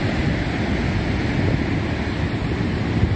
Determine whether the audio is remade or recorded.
recorded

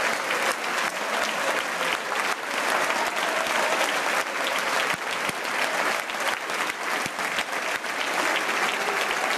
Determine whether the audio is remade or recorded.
recorded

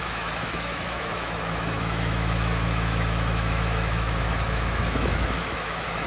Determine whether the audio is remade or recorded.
remade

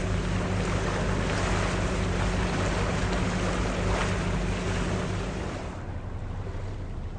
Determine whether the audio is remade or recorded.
recorded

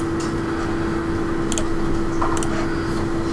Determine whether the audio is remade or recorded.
recorded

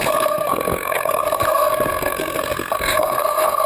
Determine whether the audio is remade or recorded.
remade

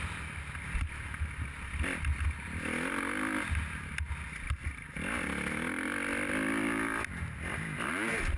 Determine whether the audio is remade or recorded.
recorded